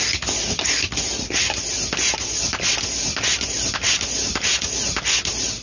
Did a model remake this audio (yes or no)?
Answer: no